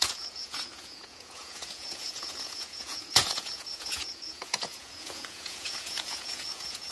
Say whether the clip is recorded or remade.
remade